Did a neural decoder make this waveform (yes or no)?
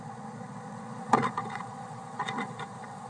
yes